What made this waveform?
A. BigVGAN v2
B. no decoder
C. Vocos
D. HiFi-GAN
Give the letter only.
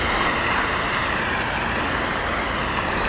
A